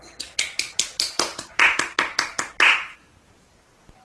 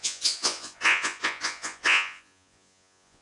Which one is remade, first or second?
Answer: second